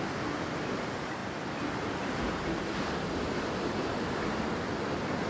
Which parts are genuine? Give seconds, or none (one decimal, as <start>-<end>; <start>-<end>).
0.0-5.3